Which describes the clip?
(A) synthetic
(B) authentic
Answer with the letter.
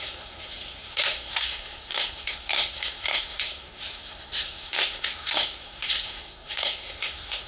A